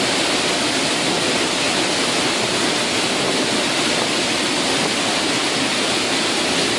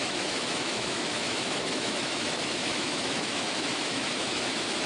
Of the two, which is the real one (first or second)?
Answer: first